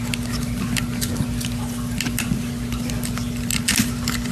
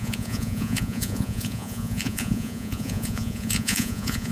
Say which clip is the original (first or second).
first